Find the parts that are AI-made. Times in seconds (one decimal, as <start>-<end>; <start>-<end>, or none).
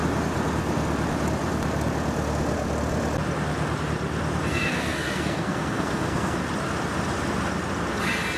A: 4.5-6.4